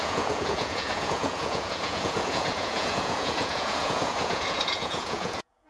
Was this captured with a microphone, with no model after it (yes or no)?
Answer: no